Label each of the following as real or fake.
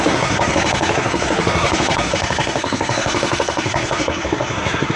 fake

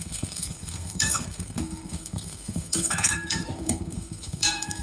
fake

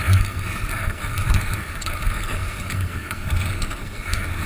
fake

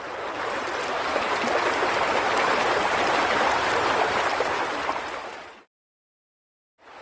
real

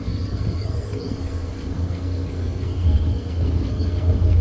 fake